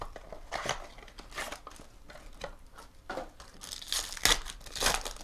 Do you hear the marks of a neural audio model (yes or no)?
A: no